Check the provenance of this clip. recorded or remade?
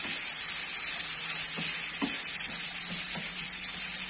recorded